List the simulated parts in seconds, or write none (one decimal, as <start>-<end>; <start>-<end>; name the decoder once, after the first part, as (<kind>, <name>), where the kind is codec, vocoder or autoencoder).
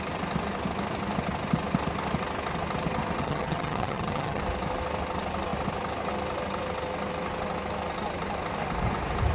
3.2-4.4 (vocoder, HiFi-GAN)